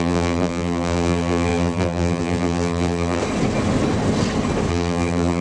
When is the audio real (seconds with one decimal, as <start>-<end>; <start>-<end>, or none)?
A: 3.2-4.7

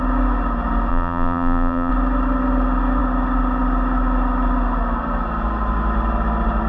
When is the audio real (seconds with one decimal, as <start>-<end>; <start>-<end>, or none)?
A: 0.0-0.9; 1.9-6.7

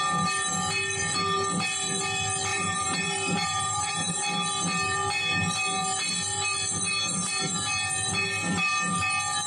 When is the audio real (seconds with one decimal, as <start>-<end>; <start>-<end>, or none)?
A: 0.0-2.5; 4.2-9.5